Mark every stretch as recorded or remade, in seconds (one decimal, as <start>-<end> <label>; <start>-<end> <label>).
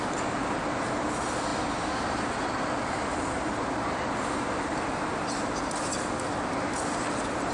0.0-7.5 recorded